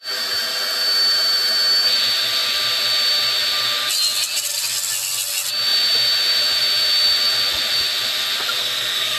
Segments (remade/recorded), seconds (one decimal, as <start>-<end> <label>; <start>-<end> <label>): 0.0-8.6 recorded; 8.6-9.2 remade